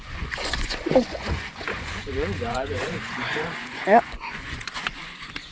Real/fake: fake